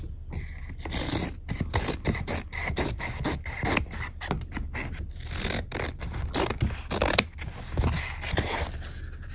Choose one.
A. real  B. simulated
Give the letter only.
A